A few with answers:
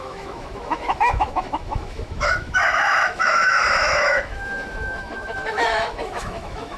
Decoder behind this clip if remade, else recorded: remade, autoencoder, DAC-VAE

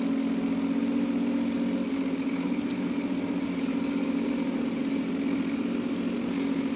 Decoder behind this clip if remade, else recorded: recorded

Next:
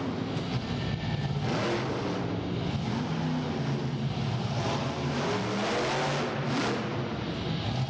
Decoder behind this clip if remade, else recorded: recorded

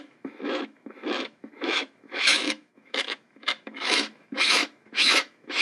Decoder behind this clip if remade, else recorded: remade, autoencoder, DAC-VAE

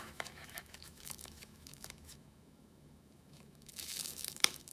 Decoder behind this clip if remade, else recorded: remade, autoencoder, DAC-VAE